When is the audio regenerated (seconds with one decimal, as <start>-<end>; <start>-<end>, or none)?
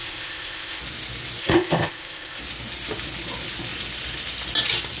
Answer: 0.0-0.8; 1.4-2.4